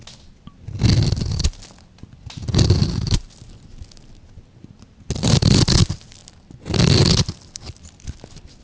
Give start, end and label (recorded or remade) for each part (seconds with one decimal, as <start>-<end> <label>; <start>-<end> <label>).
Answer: 0.0-2.8 recorded; 2.8-3.5 remade; 3.5-8.6 recorded